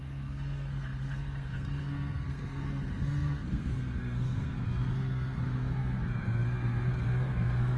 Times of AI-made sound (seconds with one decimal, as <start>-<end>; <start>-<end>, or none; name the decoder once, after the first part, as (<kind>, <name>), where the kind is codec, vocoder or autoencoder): 0.0-7.8 (codec, SNAC)

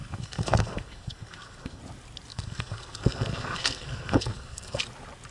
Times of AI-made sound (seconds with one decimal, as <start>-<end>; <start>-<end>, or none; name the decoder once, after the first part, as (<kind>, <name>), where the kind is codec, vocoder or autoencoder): 0.0-1.8 (codec, SNAC); 2.3-4.8

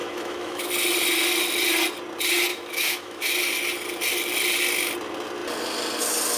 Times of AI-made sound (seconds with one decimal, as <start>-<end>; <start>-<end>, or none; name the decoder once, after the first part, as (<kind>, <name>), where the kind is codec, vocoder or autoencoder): 0.0-0.7 (autoencoder, DAC-VAE); 2.5-3.3

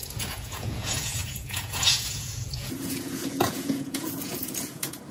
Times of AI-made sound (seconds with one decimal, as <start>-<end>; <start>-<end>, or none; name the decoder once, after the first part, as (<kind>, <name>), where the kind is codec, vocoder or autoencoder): 0.0-5.1 (vocoder, Vocos)

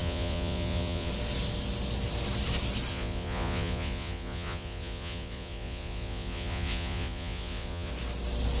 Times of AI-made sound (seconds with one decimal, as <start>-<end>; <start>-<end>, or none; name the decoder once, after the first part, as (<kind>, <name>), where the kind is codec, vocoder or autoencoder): 0.0-1.1 (vocoder, Vocos); 2.9-7.9